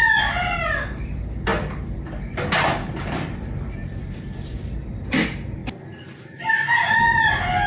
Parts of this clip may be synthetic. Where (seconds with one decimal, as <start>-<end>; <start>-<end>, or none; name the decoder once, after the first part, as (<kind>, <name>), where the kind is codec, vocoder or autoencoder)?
none